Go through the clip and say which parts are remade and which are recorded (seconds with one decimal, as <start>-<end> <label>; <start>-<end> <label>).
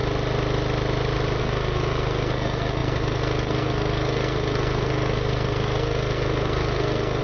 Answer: 0.0-1.4 recorded; 1.4-7.2 remade